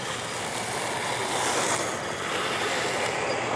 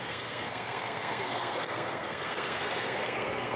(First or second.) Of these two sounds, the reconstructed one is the second